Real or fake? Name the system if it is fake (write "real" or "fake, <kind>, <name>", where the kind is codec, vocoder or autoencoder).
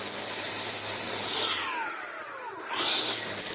real